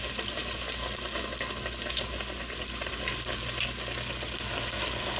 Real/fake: real